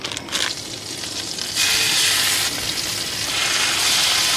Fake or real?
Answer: real